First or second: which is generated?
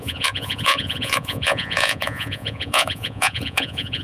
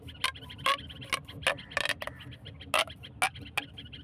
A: first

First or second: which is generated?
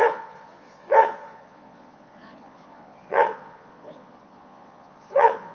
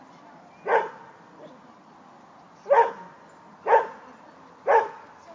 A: first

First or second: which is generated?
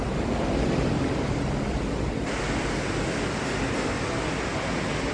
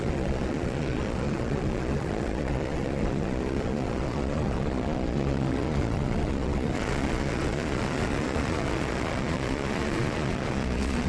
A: second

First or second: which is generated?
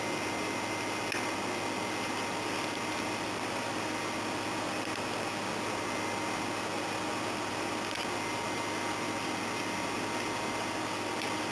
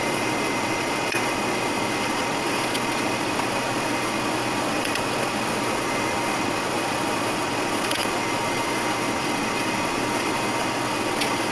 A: second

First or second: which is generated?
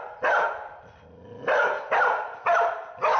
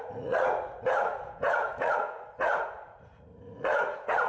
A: second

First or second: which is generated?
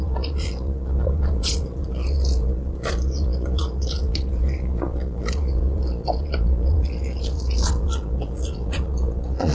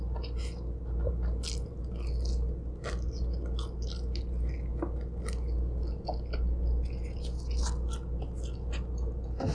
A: first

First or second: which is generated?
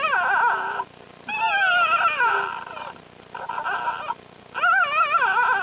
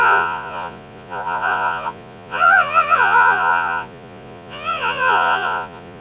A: second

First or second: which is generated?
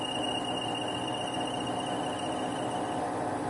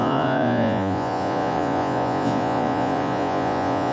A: second